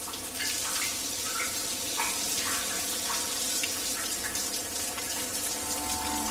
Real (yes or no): yes